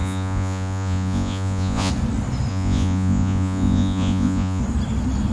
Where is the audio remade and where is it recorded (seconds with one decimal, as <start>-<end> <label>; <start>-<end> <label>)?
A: 0.0-1.9 remade; 1.9-2.5 recorded; 2.5-4.6 remade; 4.6-5.3 recorded